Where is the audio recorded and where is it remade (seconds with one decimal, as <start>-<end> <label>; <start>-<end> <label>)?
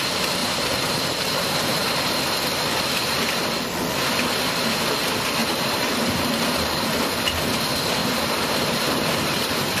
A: 0.0-0.4 recorded; 0.4-2.0 remade; 2.0-5.4 recorded; 5.4-7.1 remade; 7.1-8.0 recorded; 8.0-9.8 remade